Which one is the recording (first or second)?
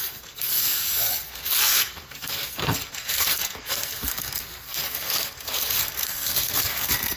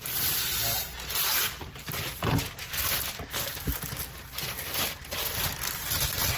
second